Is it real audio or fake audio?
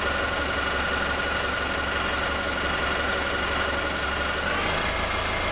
real